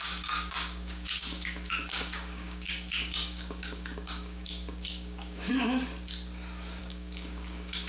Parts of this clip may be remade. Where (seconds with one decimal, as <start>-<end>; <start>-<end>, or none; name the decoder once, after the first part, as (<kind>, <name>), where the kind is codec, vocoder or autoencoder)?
0.0-5.5 (codec, DAC); 6.8-7.9